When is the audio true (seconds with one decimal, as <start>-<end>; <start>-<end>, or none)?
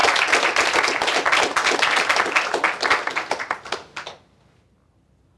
0.0-5.4